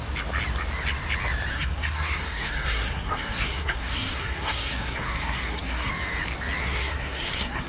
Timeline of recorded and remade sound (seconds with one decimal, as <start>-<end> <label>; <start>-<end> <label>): 0.0-1.5 recorded; 1.5-5.9 remade; 5.9-6.6 recorded; 6.6-7.7 remade

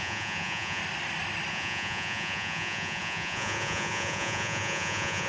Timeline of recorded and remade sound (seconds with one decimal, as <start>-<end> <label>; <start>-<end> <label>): 0.0-0.8 remade; 0.8-1.5 recorded; 1.5-5.3 remade

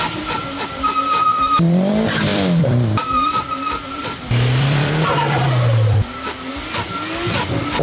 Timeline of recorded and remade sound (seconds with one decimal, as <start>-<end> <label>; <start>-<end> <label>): 0.0-1.3 recorded; 1.3-1.9 remade; 1.9-2.3 recorded; 2.3-6.5 remade; 6.5-7.8 recorded

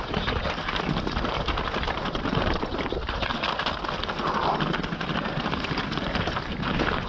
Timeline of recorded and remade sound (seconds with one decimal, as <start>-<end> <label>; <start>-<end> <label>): 0.0-2.7 remade; 2.7-4.5 recorded; 4.5-7.1 remade

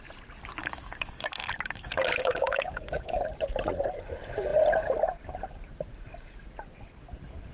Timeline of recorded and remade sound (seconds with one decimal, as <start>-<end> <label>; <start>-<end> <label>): 0.0-0.6 recorded; 0.6-3.2 remade; 3.2-7.5 recorded

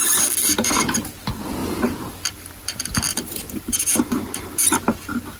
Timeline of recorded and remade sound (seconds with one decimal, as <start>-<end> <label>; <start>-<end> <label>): 0.0-3.1 recorded; 3.1-4.1 remade; 4.1-5.4 recorded